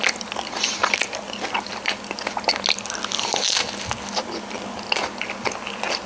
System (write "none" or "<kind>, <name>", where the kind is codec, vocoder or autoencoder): none